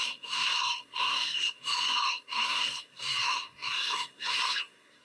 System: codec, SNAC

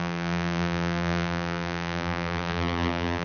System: vocoder, BigVGAN v2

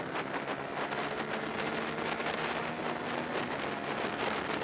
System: none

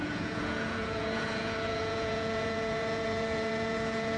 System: vocoder, Vocos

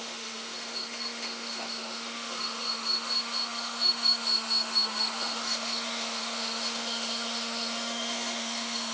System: autoencoder, DAC-VAE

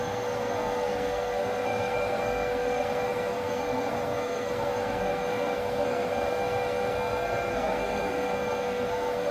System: codec, SNAC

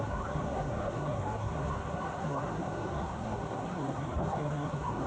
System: codec, SNAC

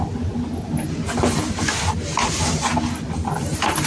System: none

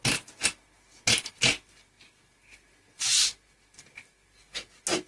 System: none